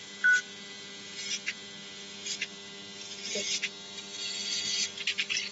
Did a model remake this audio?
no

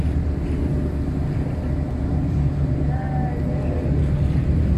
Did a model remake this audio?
no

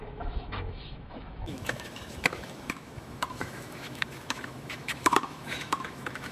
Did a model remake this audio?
yes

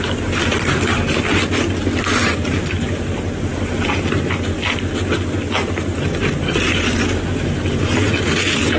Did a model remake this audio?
no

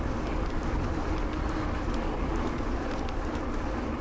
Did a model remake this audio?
no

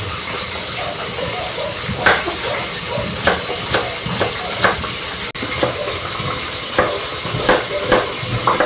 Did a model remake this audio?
no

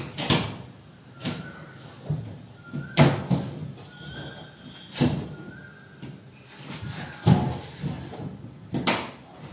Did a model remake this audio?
no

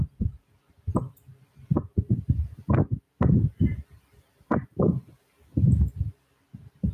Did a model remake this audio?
no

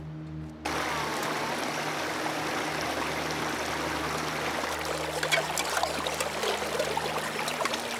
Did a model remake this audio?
no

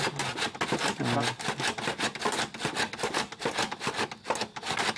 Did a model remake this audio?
no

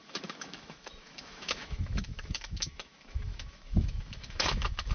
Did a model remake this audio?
yes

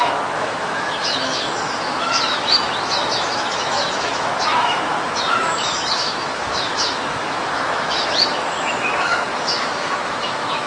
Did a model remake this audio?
yes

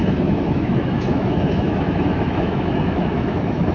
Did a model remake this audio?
yes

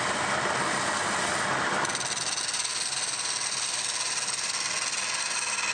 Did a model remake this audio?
no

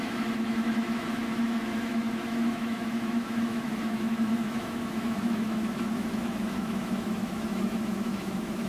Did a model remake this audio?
yes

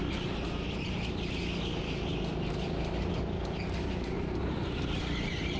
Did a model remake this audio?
no